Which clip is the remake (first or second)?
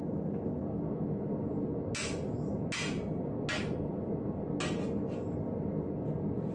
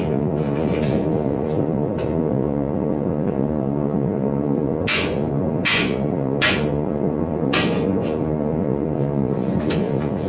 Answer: second